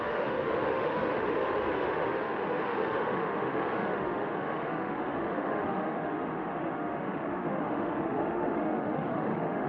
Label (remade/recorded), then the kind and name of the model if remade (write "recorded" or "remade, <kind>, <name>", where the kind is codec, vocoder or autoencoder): remade, autoencoder, DAC-VAE